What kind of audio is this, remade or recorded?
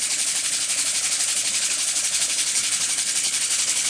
remade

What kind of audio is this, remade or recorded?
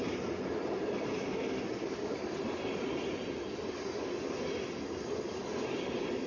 recorded